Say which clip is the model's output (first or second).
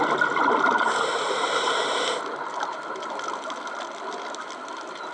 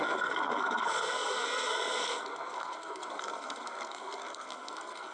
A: second